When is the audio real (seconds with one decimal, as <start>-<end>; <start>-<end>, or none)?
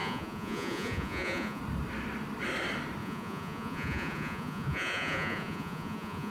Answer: 1.6-3.0